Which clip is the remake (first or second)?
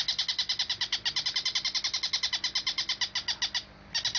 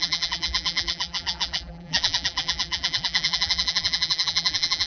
second